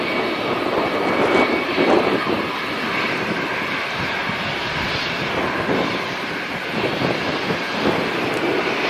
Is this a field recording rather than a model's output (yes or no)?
yes